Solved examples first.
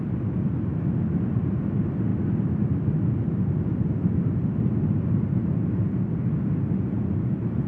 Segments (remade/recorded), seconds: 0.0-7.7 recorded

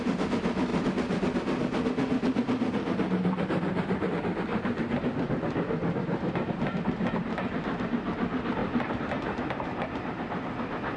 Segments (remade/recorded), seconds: 0.0-4.5 recorded; 4.5-6.8 remade; 6.8-11.0 recorded

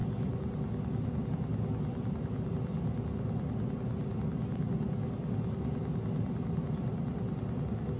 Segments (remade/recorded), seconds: 0.0-8.0 recorded

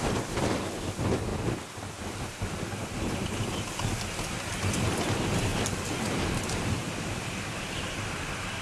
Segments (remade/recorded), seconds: 0.0-5.5 recorded; 5.5-6.7 remade; 6.7-8.6 recorded

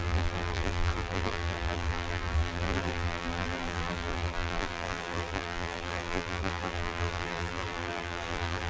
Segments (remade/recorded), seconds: 0.0-8.7 remade

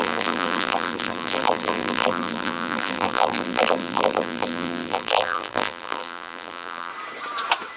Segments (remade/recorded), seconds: 0.0-6.9 remade; 6.9-7.8 recorded

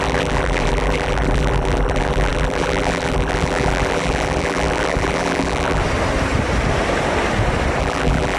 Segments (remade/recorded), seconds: 0.0-5.8 remade; 5.8-7.8 recorded; 7.8-8.4 remade

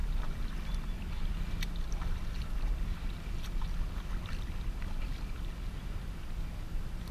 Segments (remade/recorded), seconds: 0.0-7.1 recorded